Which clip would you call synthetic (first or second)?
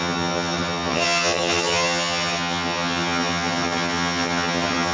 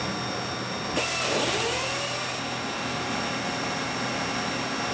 first